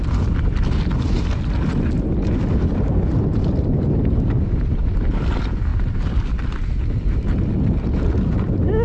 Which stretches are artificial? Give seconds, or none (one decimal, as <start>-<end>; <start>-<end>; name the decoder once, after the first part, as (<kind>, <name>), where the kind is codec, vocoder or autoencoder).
none